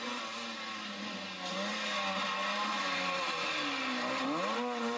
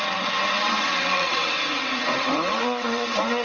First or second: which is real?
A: first